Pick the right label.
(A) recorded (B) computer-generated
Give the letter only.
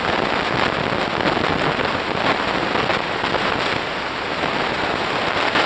A